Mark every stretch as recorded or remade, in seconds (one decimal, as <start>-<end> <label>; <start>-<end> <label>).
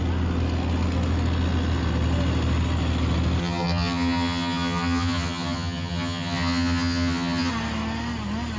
0.0-3.4 recorded; 3.4-7.5 remade; 7.5-8.6 recorded